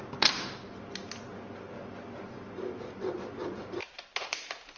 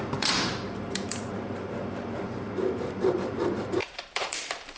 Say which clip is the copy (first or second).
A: second